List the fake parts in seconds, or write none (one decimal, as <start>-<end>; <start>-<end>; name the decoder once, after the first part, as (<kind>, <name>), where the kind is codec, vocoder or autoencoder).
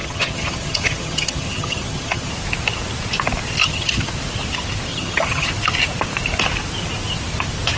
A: 0.0-2.3 (vocoder, HiFi-GAN); 3.6-4.1; 4.9-5.5